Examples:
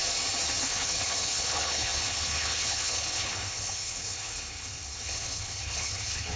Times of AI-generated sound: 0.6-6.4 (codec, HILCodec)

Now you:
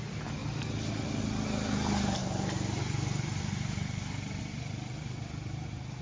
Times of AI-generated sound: 2.2-4.4 (vocoder, BigVGAN v2)

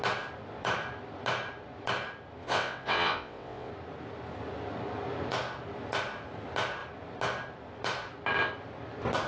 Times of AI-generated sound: 2.4-3.7 (vocoder, WaveNeXt)

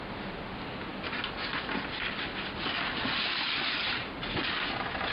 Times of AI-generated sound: 0.9-4.0 (vocoder, BigVGAN v2)

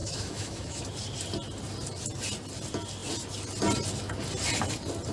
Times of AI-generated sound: 0.0-0.8 (autoencoder, DAC-VAE)

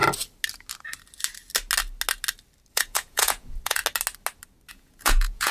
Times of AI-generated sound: 2.7-3.8 (vocoder, Vocos); 4.7-5.5